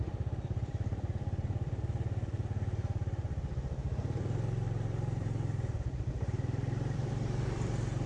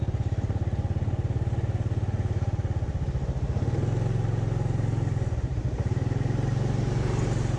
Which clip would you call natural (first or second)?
second